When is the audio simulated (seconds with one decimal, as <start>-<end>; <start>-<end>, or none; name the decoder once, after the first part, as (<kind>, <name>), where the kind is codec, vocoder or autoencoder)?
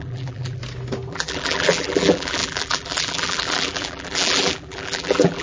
0.0-0.6 (vocoder, BigVGAN v2); 1.1-5.4